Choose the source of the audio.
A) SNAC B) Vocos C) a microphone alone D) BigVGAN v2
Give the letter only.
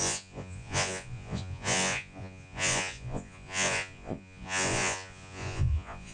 B